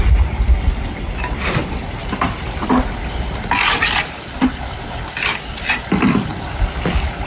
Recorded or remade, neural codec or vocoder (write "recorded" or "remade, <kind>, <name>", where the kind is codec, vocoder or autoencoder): recorded